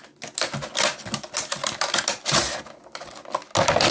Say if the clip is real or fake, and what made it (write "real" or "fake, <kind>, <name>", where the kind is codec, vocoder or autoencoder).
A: real